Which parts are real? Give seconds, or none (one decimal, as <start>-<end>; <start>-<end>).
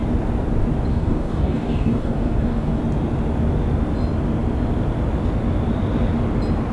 0.0-0.9; 2.8-6.7